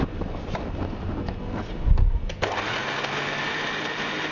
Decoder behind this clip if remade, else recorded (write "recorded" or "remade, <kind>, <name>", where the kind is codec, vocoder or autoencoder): recorded